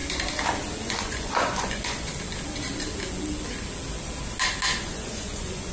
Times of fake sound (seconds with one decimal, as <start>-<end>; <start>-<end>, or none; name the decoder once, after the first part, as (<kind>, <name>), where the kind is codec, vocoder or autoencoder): 0.8-2.1 (vocoder, Vocos); 4.8-5.7